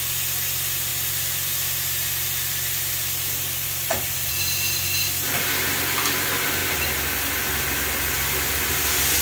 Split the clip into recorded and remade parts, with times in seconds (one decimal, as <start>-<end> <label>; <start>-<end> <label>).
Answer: 0.0-6.6 remade; 6.6-8.7 recorded; 8.7-9.2 remade